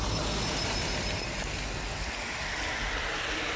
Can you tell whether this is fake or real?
real